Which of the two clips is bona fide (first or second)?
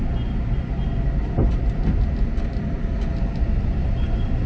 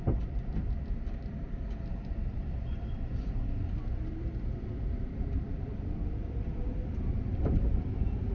first